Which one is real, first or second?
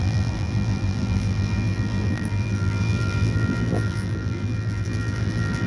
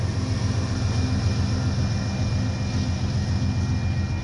second